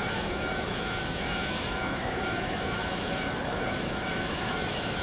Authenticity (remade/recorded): remade